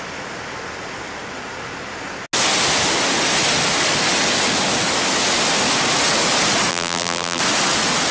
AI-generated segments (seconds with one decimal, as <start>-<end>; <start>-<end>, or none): 6.7-7.4